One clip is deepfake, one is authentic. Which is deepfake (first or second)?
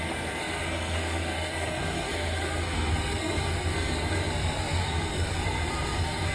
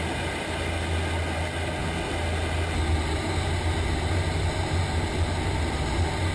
first